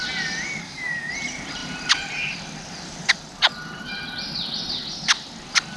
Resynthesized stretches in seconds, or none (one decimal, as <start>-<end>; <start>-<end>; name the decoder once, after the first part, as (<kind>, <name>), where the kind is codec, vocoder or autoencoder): 0.6-1.1 (codec, DAC)

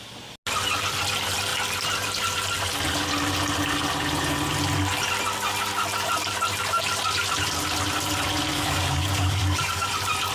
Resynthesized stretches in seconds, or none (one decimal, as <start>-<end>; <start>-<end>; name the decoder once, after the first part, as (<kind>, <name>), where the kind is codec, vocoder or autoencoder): 8.5-9.9 (codec, DAC)

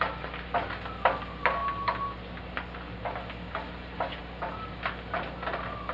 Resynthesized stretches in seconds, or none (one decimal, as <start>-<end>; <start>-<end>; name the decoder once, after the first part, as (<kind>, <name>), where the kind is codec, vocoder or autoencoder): none

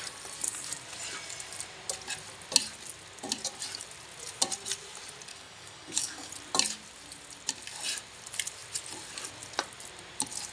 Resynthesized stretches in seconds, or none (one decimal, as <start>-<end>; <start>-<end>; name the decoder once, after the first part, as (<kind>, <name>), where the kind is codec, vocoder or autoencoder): 5.3-6.3 (codec, DAC)

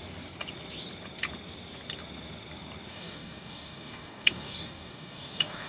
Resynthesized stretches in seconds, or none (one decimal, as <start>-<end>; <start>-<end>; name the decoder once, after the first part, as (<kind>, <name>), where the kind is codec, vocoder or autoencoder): 2.9-5.7 (codec, DAC)

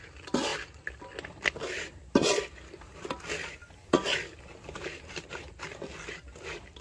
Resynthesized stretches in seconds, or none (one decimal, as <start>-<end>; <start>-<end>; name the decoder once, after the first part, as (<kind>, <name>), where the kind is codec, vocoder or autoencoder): none

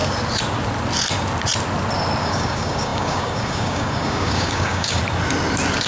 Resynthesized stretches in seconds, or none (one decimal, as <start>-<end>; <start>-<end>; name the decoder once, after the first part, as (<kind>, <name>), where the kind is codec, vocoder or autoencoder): 2.2-5.0 (codec, DAC)

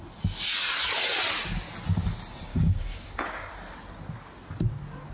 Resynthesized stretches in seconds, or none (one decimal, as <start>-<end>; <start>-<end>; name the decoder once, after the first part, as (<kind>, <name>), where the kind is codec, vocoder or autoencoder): 2.5-3.5 (codec, DAC)